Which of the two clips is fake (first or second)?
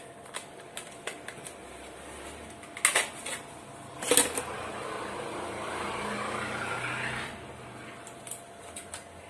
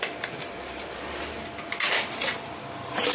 second